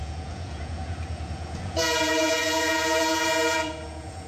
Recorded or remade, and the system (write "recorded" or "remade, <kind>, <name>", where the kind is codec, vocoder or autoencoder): remade, vocoder, Vocos